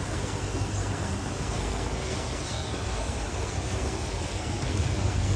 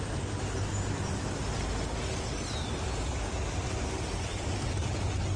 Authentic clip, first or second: second